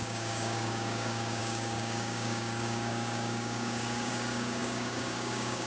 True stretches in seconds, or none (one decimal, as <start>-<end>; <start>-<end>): none